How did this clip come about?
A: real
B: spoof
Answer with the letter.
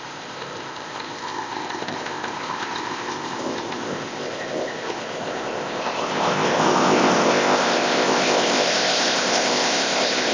B